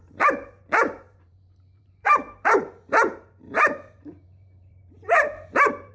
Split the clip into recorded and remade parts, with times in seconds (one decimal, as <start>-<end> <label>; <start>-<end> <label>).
0.0-5.9 remade